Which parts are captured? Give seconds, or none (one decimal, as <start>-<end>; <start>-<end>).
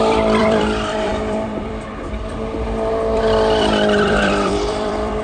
none